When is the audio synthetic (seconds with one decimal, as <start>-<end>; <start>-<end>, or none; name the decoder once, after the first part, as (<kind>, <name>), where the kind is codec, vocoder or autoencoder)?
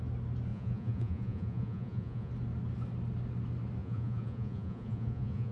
0.5-2.3 (vocoder, Vocos); 3.8-5.5